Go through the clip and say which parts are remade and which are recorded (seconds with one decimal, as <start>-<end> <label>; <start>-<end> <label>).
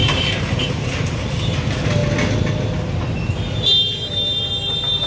0.0-1.3 remade; 1.3-5.1 recorded